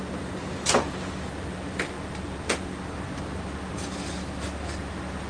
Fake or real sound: real